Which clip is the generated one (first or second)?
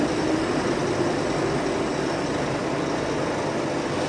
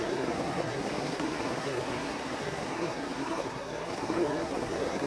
second